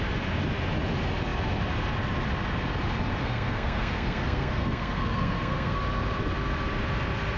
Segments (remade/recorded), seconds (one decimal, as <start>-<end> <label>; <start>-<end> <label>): 0.0-3.2 recorded; 3.2-5.8 remade; 5.8-7.4 recorded